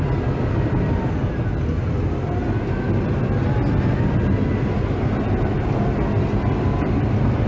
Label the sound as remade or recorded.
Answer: recorded